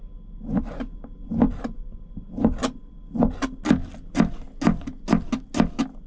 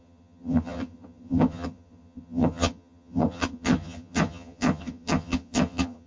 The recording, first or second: first